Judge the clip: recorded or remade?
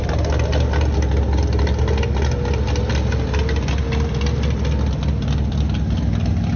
recorded